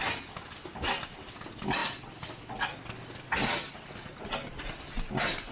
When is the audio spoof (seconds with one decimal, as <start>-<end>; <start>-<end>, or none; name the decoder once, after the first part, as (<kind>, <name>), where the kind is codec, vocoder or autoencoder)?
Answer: none